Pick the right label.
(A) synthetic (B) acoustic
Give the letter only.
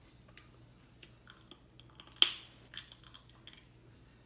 B